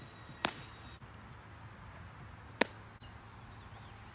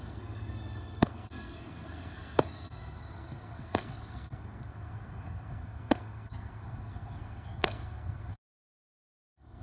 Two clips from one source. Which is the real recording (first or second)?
first